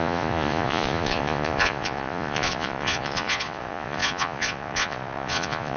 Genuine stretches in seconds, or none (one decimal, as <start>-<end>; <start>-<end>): none